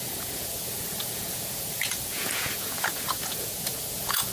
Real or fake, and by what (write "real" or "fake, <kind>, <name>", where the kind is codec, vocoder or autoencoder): fake, vocoder, Vocos